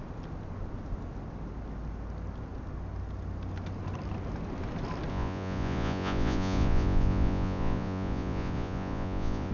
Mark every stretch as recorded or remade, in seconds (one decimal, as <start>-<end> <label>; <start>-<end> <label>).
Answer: 0.0-5.1 recorded; 5.1-9.5 remade